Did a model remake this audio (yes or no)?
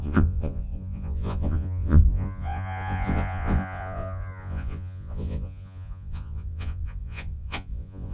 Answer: yes